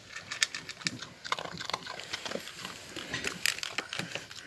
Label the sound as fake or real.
real